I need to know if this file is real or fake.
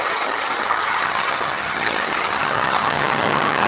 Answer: fake